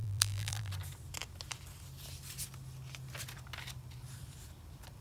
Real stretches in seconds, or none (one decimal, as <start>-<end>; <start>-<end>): 0.7-5.0